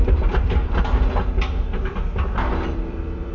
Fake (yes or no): yes